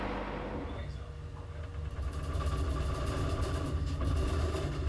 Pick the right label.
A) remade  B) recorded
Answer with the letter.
B